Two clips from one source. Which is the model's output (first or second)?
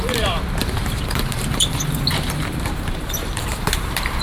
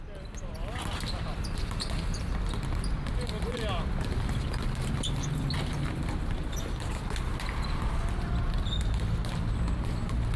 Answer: first